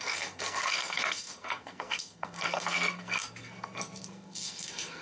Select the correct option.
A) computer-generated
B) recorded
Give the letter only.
A